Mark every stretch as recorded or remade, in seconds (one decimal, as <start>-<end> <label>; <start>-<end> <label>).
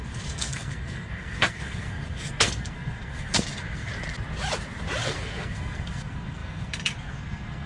0.0-3.9 remade; 3.9-5.0 recorded; 5.0-7.7 remade